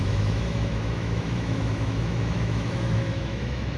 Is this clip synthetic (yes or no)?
yes